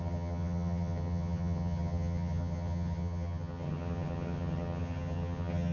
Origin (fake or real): fake